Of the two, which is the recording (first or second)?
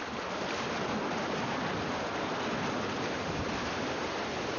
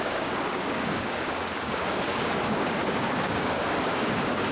first